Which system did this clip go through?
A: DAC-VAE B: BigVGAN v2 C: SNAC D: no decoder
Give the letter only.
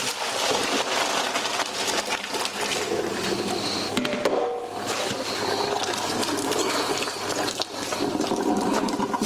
D